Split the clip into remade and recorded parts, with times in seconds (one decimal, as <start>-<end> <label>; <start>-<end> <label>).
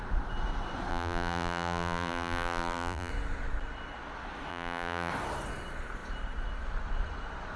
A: 0.0-0.9 recorded; 0.9-3.1 remade; 3.1-4.5 recorded; 4.5-5.1 remade; 5.1-7.6 recorded